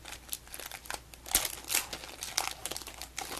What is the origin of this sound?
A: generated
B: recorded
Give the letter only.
B